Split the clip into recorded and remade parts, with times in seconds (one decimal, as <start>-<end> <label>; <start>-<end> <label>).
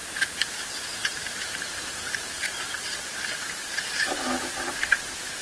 0.0-0.6 remade; 0.6-1.0 recorded; 1.0-4.2 remade; 4.2-5.4 recorded